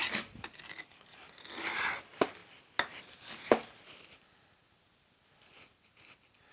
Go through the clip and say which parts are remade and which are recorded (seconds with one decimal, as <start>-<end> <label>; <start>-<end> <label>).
0.0-6.5 recorded